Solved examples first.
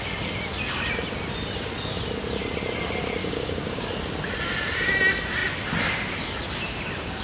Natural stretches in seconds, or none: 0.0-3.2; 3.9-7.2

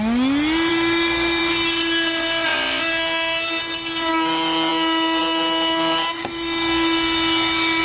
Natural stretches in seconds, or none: 0.0-0.7; 1.4-6.2